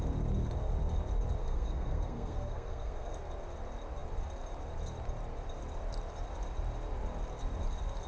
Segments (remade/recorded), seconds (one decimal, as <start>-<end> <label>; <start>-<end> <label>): 0.0-1.4 recorded; 1.4-3.1 remade; 3.1-8.1 recorded